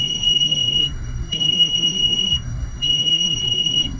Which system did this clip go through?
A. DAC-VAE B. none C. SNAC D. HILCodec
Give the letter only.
C